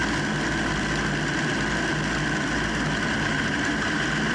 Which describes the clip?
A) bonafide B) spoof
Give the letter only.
A